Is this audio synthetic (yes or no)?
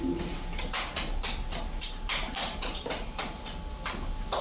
no